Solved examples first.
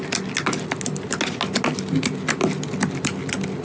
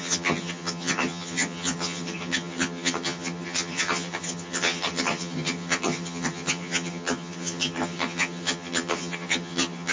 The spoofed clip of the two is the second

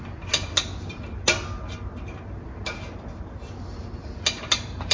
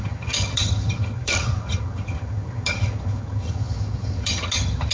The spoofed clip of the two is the second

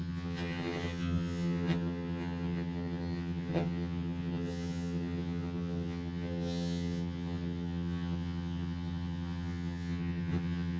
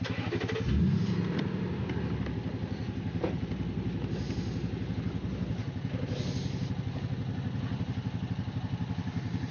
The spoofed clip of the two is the first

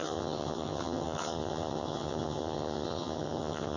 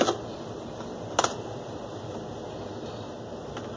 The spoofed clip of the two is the first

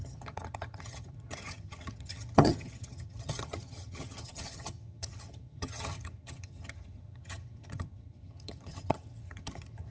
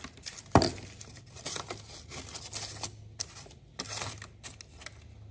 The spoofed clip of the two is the first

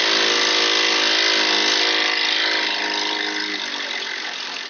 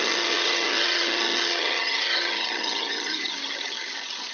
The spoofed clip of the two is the second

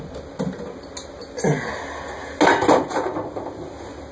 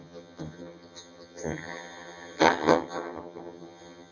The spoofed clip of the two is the second